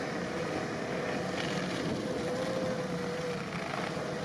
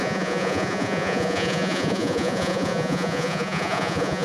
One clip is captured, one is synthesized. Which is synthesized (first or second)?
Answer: second